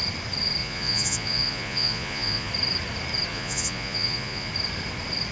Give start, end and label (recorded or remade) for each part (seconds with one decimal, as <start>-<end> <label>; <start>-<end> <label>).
0.0-0.6 recorded; 0.6-2.5 remade; 2.5-3.3 recorded; 3.3-4.5 remade; 4.5-5.3 recorded